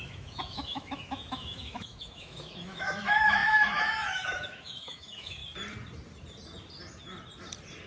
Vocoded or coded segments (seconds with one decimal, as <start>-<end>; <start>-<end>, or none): 0.0-5.4